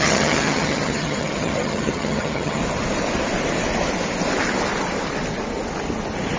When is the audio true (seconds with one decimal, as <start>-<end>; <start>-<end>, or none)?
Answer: 2.6-6.4